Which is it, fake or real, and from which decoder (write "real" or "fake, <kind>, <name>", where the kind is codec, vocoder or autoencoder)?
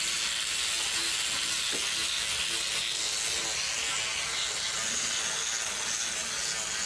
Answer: real